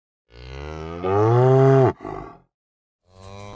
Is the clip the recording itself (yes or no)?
yes